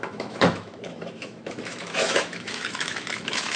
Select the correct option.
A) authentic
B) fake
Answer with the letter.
B